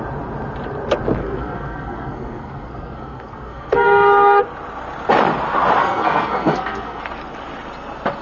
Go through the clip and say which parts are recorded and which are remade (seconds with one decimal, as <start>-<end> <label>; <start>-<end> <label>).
0.0-1.2 recorded; 1.2-4.4 remade; 4.4-5.8 recorded; 5.8-7.0 remade; 7.0-8.2 recorded

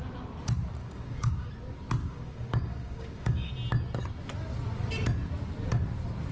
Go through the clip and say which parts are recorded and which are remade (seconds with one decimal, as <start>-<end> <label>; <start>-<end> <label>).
0.0-0.8 recorded; 0.8-1.5 remade; 1.5-2.0 recorded; 2.0-3.5 remade; 3.5-6.3 recorded

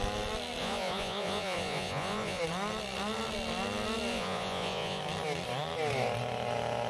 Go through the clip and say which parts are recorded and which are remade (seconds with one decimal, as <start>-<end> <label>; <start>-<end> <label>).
0.0-0.6 recorded; 0.6-2.4 remade; 2.4-4.1 recorded; 4.1-5.0 remade; 5.0-6.9 recorded

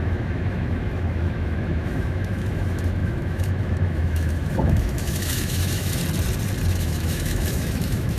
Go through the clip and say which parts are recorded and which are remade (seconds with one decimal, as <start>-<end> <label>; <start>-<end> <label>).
0.0-6.0 remade; 6.0-6.7 recorded; 6.7-8.2 remade

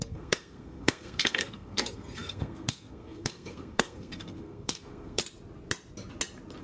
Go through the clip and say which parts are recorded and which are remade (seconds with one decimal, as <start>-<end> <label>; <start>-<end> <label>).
0.0-5.2 remade; 5.2-6.6 recorded

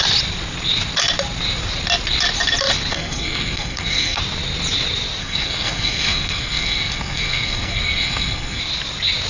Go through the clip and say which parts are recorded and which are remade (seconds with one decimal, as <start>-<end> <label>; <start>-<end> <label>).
0.0-2.9 recorded; 2.9-4.2 remade; 4.2-5.2 recorded; 5.2-8.6 remade; 8.6-9.3 recorded